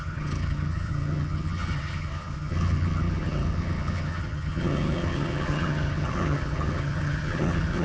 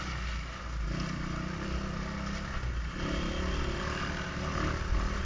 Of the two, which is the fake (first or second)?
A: first